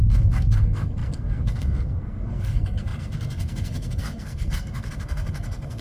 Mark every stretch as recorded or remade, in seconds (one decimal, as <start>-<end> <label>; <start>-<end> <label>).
0.0-5.8 remade